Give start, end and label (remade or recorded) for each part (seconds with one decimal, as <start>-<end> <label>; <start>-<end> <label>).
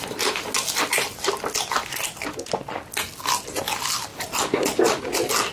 0.0-5.5 recorded